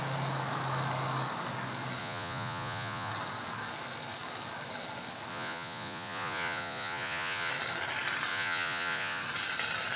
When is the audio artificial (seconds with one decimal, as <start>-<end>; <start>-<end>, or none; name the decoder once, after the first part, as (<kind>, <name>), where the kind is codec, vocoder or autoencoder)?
2.0-3.1 (vocoder, Vocos); 5.3-7.5; 8.3-9.2